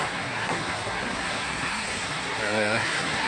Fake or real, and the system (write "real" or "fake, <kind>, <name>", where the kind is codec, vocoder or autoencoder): fake, codec, SNAC